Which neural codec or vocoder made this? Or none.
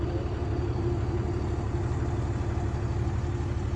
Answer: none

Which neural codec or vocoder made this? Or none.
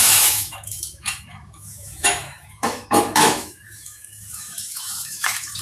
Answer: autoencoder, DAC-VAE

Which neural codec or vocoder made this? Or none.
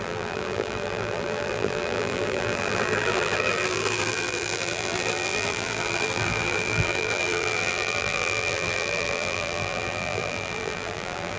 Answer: vocoder, BigVGAN v2